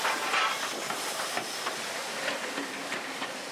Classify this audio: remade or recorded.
remade